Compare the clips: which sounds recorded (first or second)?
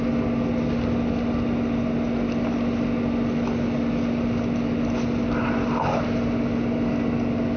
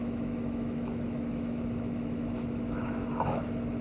first